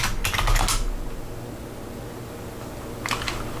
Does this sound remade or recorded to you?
recorded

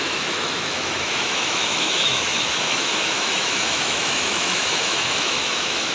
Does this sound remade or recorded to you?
remade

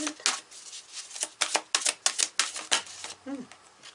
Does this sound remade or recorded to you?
recorded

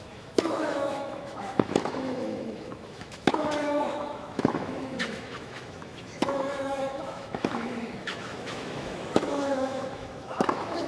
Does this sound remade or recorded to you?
remade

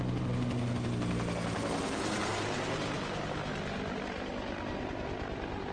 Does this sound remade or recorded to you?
recorded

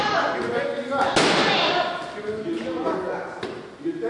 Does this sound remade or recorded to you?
recorded